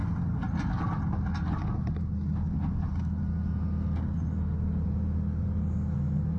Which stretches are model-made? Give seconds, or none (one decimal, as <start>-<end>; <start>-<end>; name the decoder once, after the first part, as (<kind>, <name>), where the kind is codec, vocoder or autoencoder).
none